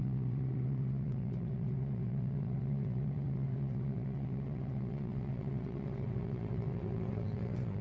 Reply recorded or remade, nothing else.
remade